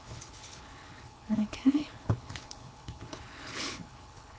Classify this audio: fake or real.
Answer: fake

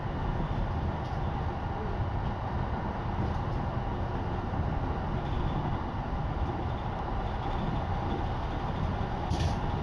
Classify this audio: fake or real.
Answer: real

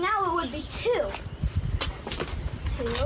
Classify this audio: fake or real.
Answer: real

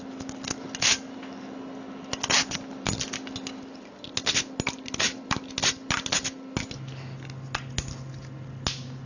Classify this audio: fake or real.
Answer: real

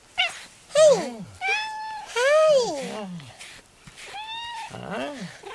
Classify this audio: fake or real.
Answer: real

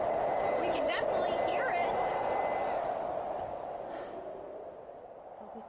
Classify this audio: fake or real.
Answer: real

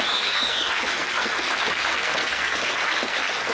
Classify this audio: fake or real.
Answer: fake